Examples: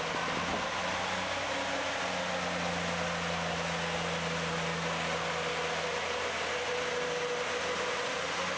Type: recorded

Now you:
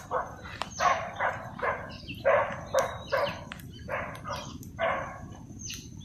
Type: remade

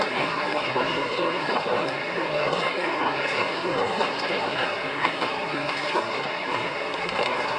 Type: remade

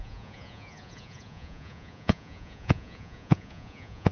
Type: remade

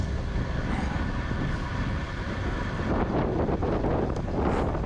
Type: recorded